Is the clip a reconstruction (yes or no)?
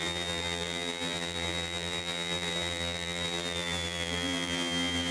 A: yes